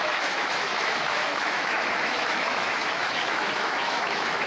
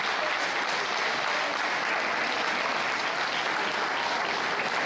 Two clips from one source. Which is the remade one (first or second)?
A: first